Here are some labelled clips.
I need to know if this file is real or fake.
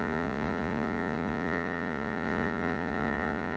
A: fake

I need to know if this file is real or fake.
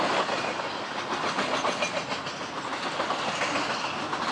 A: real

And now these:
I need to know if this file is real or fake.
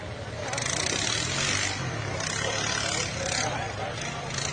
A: real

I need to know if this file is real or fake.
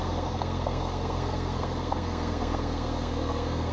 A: fake